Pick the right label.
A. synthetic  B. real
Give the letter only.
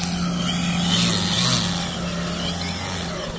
B